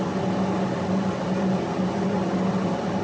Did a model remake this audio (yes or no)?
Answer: no